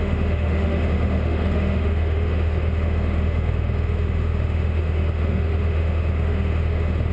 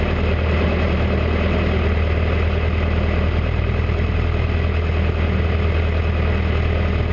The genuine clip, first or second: second